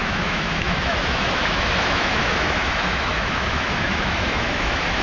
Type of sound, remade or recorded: remade